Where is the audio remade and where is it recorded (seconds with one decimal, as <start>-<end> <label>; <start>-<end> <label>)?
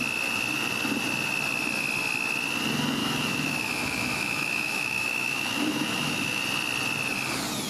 0.0-3.0 recorded; 3.0-6.4 remade; 6.4-7.7 recorded